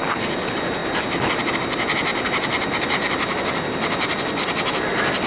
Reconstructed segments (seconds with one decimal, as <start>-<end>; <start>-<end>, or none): none